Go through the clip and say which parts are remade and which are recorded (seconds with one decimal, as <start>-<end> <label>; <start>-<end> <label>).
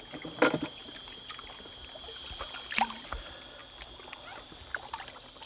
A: 0.0-5.5 recorded